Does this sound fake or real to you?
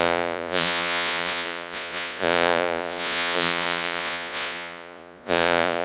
fake